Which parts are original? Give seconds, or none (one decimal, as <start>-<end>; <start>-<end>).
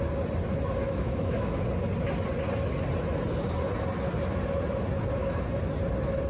0.0-0.8; 1.6-6.3